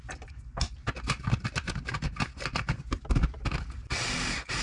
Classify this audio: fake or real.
real